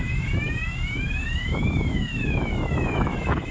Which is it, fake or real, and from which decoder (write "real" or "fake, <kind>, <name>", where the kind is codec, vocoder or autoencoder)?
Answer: fake, autoencoder, DAC-VAE